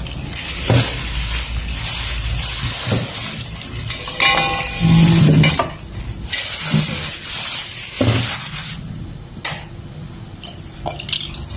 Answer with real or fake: real